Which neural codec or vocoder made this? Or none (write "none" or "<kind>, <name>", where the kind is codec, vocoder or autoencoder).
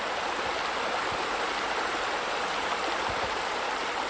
none